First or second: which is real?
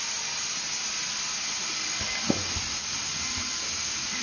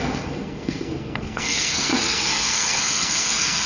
first